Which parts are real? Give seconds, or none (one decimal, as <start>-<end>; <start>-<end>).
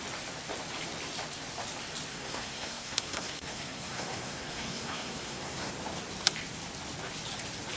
0.0-2.1; 5.7-7.8